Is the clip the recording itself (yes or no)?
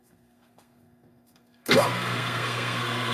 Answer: no